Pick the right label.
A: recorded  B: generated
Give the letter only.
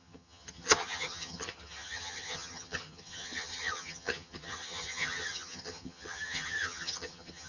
B